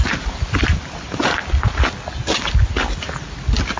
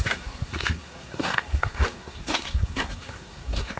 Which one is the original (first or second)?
first